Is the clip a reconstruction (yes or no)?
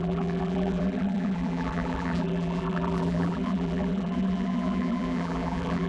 yes